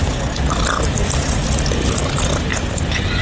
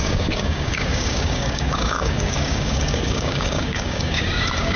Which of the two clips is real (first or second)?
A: first